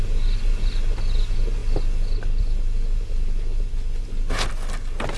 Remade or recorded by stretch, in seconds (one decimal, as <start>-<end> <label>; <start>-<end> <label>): 0.0-5.2 recorded